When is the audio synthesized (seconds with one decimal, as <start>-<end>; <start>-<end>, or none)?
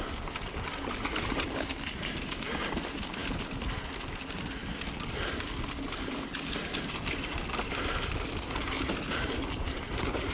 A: none